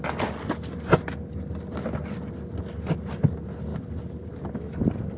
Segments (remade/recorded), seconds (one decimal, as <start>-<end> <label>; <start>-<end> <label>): 0.0-3.7 recorded; 3.7-4.5 remade; 4.5-5.2 recorded